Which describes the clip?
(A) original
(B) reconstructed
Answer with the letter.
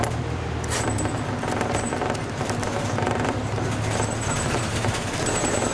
B